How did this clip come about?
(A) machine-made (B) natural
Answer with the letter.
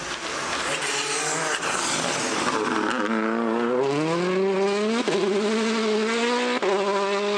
B